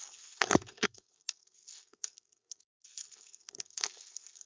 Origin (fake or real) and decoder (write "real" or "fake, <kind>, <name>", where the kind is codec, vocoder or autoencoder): fake, codec, SNAC